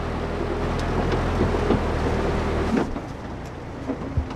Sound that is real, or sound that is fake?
real